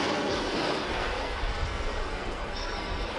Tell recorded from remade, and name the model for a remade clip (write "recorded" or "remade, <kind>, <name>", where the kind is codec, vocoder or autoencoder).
remade, codec, SNAC